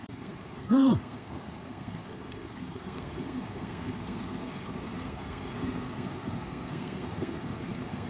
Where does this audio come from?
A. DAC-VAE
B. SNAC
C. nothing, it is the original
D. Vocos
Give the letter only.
B